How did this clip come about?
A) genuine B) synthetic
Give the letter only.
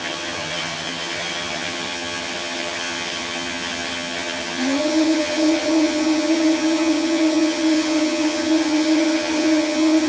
B